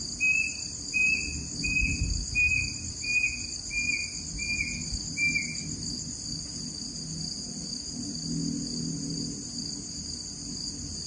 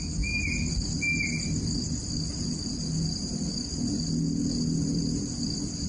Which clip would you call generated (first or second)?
second